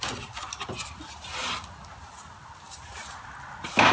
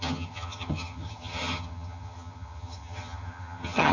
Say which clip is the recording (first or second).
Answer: first